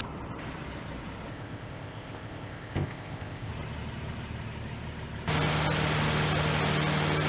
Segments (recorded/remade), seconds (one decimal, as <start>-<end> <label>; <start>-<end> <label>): 0.0-1.3 recorded; 1.3-3.5 remade; 3.5-7.3 recorded